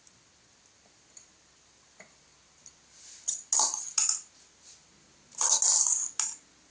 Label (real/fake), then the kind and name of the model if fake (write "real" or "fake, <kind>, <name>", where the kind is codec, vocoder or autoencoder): real